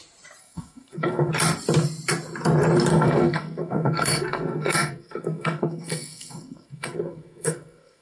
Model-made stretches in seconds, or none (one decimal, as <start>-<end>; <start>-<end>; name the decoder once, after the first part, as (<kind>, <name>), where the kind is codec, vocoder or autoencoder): 0.4-1.3 (codec, SNAC); 2.9-8.0